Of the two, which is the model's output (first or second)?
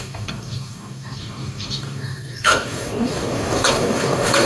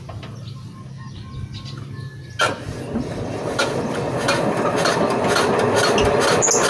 first